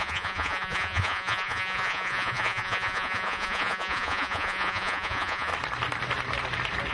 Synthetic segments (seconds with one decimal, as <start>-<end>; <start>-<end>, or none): 0.0-5.5